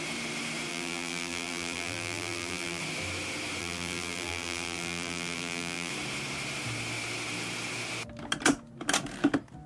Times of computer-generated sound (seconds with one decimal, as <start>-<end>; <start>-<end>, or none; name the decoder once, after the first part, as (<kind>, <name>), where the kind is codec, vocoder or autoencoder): 0.7-2.8 (vocoder, BigVGAN v2); 3.6-5.9